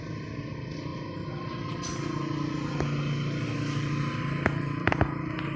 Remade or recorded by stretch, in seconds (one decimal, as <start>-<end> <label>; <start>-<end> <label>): 0.0-5.6 recorded